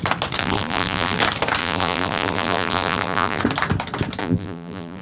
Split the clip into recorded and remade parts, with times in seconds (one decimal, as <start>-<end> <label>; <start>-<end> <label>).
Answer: 0.0-0.4 recorded; 0.4-1.2 remade; 1.2-1.6 recorded; 1.6-3.4 remade; 3.4-4.2 recorded; 4.2-5.0 remade